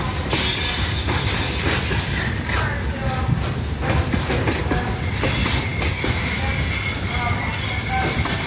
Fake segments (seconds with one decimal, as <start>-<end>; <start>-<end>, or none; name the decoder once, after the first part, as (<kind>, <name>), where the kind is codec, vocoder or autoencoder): none